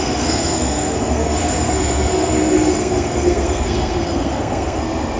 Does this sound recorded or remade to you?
remade